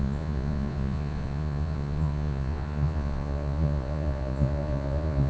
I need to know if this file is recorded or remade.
remade